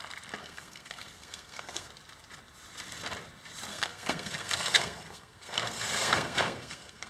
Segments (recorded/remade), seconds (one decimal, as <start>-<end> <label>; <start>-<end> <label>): 0.0-0.4 recorded; 0.4-1.9 remade; 1.9-3.7 recorded; 3.7-7.1 remade